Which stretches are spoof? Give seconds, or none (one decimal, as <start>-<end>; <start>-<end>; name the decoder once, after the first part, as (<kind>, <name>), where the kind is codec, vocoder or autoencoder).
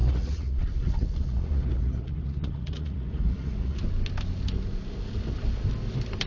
0.0-3.8 (vocoder, Vocos)